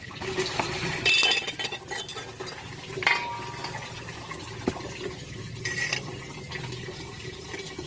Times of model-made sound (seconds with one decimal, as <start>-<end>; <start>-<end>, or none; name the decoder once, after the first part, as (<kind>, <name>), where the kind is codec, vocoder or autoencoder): none